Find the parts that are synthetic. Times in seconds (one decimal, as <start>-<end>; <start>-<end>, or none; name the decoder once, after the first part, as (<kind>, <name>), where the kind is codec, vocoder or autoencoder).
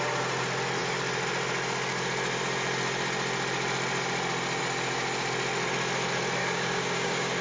6.4-7.4 (codec, DAC)